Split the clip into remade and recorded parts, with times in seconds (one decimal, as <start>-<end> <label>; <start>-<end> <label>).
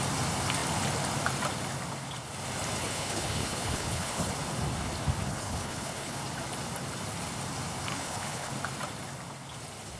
0.0-2.8 recorded; 2.8-4.3 remade; 4.3-5.3 recorded; 5.3-6.2 remade; 6.2-7.9 recorded; 7.9-8.5 remade; 8.5-10.0 recorded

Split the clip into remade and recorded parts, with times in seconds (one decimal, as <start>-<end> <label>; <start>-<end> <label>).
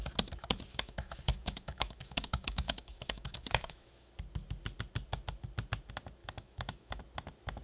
0.0-0.7 recorded; 0.7-4.1 remade; 4.1-6.2 recorded; 6.2-7.0 remade; 7.0-7.6 recorded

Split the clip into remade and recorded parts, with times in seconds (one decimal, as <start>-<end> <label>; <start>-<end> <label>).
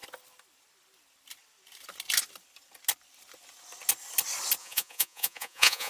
0.0-4.6 recorded; 4.6-5.9 remade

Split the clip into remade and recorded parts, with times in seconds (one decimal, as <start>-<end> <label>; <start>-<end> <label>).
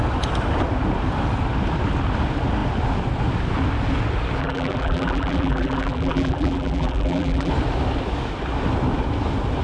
0.0-4.4 recorded; 4.4-7.5 remade; 7.5-9.6 recorded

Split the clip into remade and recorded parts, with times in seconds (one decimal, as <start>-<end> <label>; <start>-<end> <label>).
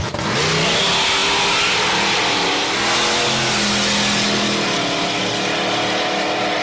0.0-6.6 recorded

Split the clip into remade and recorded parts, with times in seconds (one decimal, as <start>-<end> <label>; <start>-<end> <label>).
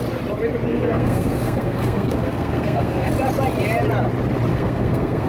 0.0-0.7 recorded; 0.7-3.1 remade; 3.1-4.5 recorded; 4.5-5.3 remade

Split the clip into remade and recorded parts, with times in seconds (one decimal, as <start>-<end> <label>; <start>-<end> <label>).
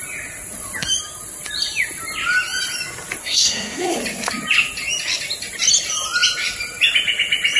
0.0-3.2 recorded; 3.2-4.0 remade; 4.0-7.6 recorded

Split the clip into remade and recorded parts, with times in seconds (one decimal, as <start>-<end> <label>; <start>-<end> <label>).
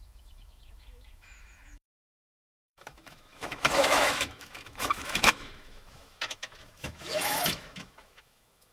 0.0-8.7 remade